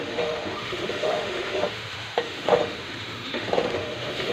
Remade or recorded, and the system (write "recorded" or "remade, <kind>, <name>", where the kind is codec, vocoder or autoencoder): remade, autoencoder, DAC-VAE